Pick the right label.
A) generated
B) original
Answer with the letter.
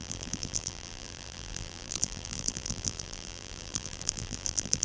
A